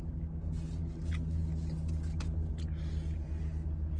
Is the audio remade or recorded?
recorded